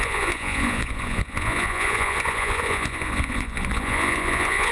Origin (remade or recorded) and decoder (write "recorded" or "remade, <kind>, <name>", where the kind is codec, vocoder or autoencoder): remade, vocoder, Vocos